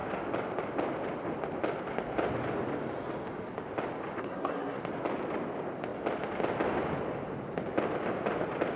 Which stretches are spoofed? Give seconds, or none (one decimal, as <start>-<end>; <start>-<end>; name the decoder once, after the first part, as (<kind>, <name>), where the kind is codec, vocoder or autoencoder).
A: 4.2-4.8 (codec, SNAC)